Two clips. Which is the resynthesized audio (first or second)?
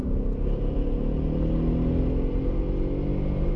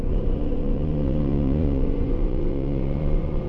second